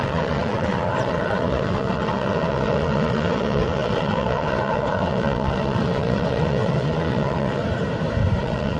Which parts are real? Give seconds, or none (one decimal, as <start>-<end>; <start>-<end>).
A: 7.6-8.4